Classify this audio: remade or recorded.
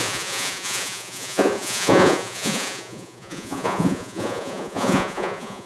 remade